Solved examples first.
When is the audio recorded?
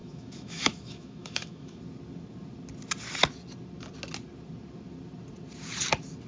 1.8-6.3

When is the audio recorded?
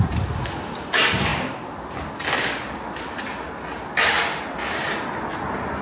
0.0-5.8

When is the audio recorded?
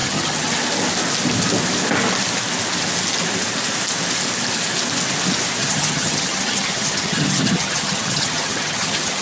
0.5-5.6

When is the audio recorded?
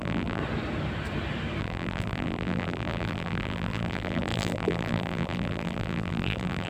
0.4-1.6